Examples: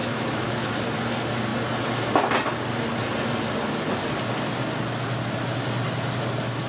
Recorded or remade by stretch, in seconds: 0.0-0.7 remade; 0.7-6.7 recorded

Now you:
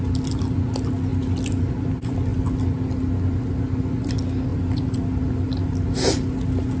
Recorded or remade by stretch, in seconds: 0.0-6.8 recorded

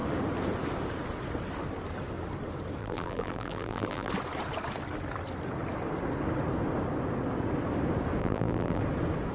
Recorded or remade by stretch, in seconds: 0.0-2.8 recorded; 2.8-4.1 remade; 4.1-8.2 recorded; 8.2-8.8 remade; 8.8-9.3 recorded